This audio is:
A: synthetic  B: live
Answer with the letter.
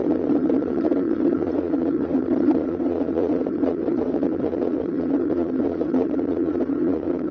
A